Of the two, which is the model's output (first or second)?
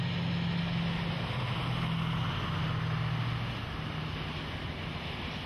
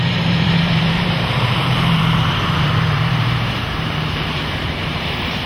second